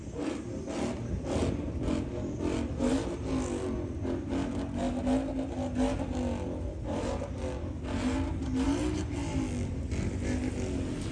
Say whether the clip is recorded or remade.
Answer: recorded